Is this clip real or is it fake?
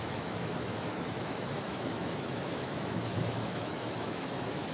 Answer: fake